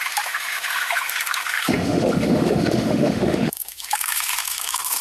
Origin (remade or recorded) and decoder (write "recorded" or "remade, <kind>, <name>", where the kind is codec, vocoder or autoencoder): remade, autoencoder, DAC-VAE